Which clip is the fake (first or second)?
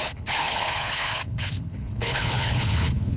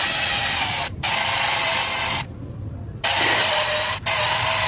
first